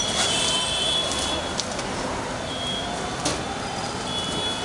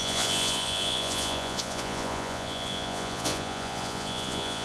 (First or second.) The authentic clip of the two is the first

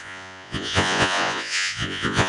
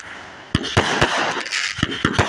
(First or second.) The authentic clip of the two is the second